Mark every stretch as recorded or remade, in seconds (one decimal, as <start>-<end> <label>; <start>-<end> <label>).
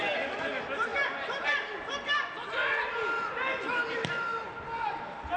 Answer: 0.0-5.4 recorded